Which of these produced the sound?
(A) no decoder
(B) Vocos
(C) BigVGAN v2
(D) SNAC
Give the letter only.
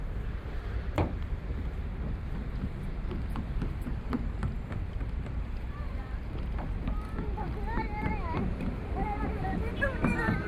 C